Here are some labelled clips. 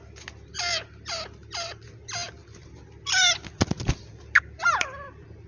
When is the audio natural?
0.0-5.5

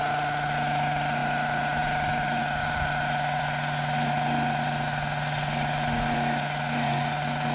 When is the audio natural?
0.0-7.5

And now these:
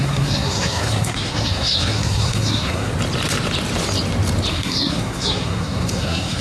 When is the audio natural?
2.9-4.5

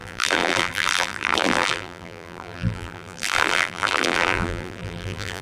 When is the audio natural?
none

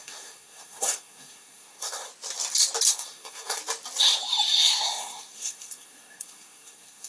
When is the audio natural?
2.1-2.9; 3.6-4.6

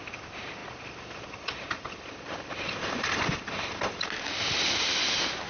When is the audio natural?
0.0-5.5

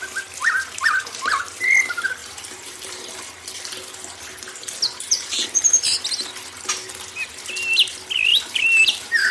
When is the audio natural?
0.0-2.2; 3.6-5.1; 5.8-8.3

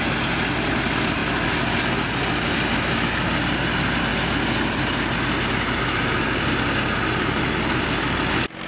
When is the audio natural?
0.0-8.7